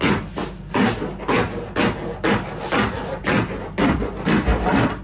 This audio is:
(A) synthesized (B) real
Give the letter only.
B